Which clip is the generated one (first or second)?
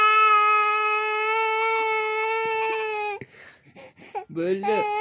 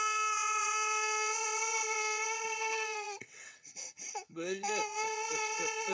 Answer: second